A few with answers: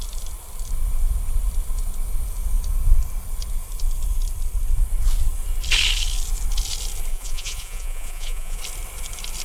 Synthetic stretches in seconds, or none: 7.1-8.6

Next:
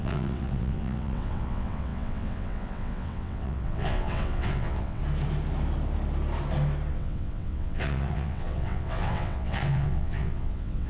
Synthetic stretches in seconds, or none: 0.0-5.0; 6.9-10.9

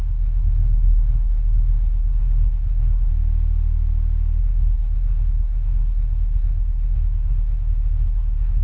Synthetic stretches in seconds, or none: 0.0-3.1; 4.4-8.6

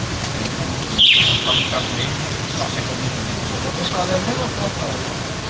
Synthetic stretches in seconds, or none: none